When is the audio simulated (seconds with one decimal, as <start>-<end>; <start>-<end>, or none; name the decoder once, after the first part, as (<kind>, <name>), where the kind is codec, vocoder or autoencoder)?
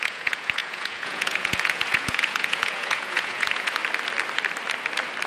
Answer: 0.0-3.8 (vocoder, Vocos)